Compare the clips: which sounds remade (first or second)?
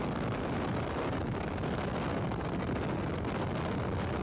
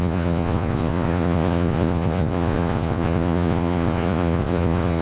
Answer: second